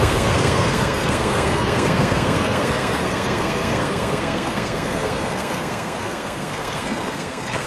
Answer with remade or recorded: remade